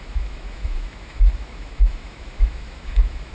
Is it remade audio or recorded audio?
remade